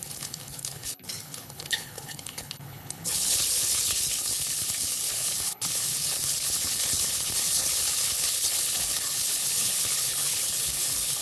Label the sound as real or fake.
fake